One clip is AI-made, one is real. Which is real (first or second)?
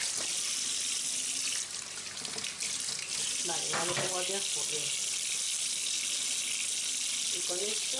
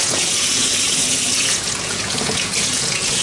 first